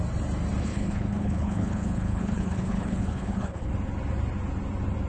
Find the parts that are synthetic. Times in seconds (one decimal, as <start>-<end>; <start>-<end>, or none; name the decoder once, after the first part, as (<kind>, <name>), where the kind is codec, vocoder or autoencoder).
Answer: 0.6-3.7 (codec, HILCodec)